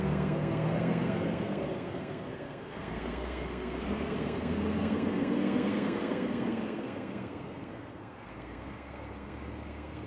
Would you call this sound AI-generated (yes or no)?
yes